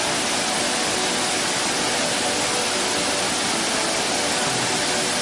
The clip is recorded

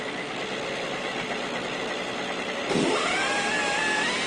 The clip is recorded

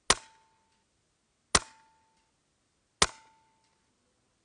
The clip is recorded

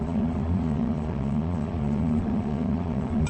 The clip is remade